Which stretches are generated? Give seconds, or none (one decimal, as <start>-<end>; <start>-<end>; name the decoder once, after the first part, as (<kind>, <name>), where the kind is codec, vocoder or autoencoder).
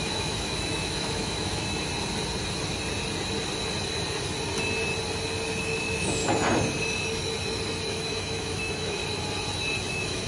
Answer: 0.0-1.9 (autoencoder, DAC-VAE); 5.6-6.2; 7.9-9.0; 9.9-10.3